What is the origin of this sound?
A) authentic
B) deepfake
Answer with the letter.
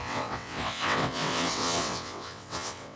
B